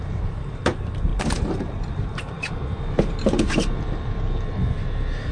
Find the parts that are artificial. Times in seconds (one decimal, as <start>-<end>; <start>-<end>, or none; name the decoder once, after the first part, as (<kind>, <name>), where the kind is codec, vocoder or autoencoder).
0.0-5.3 (vocoder, BigVGAN v2)